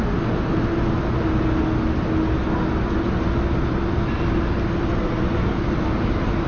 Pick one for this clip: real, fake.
real